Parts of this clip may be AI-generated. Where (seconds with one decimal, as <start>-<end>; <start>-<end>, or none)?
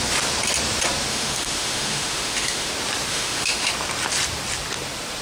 1.1-2.7; 3.1-3.7